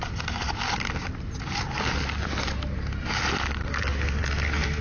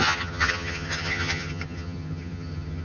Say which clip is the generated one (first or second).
second